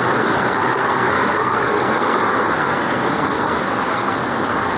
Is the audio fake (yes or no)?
yes